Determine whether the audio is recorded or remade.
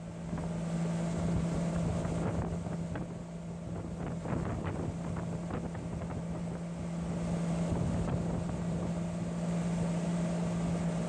recorded